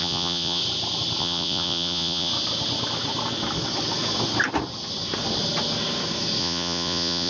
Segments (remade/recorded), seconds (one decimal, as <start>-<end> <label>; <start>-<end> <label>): 0.0-0.6 remade; 0.6-1.2 recorded; 1.2-2.3 remade; 2.3-6.4 recorded; 6.4-7.3 remade